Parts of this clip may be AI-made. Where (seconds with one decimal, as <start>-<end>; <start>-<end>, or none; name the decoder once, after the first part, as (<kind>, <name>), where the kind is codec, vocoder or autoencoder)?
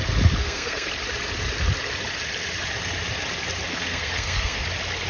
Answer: 0.4-0.9 (codec, SNAC); 3.7-4.6